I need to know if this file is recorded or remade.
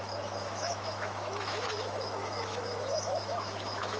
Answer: remade